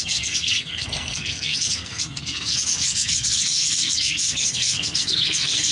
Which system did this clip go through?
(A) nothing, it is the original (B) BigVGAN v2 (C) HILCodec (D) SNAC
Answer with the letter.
D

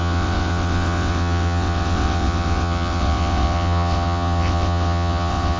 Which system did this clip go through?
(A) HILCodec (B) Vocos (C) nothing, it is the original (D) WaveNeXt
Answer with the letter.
D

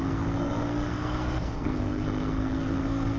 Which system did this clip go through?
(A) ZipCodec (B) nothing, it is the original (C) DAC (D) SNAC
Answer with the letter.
D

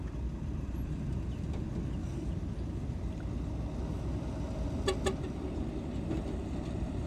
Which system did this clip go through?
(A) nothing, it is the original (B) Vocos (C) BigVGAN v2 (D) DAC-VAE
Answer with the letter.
A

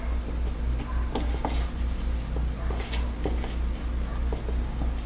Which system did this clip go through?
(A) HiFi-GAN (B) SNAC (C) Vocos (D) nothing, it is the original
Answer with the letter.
D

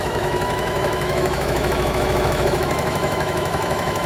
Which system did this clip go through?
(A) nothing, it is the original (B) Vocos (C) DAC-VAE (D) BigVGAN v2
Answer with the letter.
C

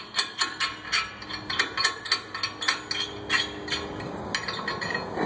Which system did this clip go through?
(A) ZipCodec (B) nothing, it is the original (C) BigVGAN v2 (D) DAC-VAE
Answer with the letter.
B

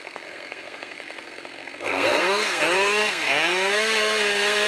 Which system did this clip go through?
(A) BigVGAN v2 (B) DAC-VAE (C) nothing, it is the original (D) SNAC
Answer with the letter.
D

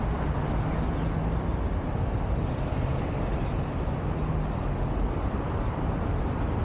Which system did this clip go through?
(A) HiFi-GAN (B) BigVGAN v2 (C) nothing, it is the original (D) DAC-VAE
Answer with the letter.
C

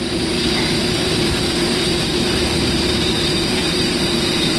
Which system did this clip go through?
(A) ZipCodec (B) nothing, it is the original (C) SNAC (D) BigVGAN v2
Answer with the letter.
D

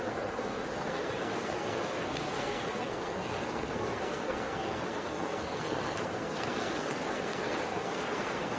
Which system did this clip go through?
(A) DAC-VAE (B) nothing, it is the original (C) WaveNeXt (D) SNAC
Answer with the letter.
D